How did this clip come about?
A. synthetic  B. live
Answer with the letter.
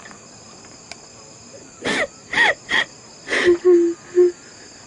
B